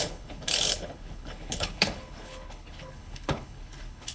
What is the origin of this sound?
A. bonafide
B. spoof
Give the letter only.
B